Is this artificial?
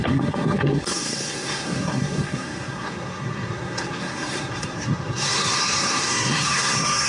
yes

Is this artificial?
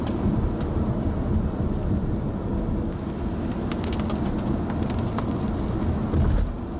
no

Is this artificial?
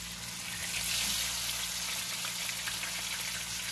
no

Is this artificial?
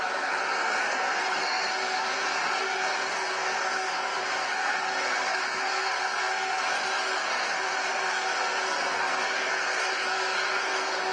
yes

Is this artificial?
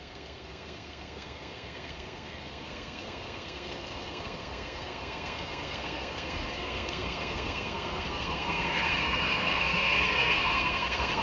yes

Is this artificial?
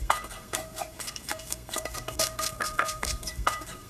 yes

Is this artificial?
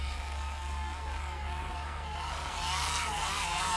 yes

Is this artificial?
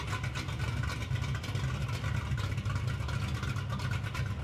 no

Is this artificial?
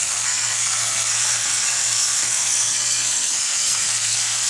yes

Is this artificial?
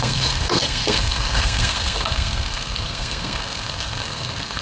yes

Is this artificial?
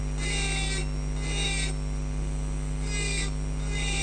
no